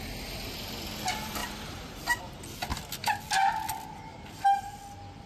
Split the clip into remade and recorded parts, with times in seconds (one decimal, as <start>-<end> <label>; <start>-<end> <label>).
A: 0.0-1.4 recorded; 1.4-2.2 remade; 2.2-4.1 recorded; 4.1-4.8 remade; 4.8-5.3 recorded

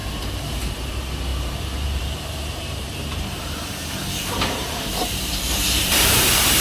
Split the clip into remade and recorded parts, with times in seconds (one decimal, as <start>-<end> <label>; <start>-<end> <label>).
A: 0.0-6.6 remade